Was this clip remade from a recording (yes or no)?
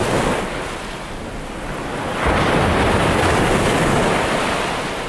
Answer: no